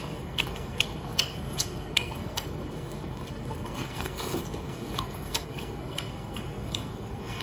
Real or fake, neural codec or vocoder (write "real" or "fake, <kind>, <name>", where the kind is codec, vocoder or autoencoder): fake, codec, SNAC